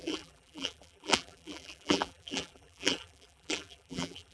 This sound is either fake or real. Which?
fake